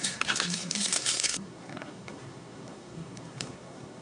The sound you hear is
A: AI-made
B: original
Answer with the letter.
A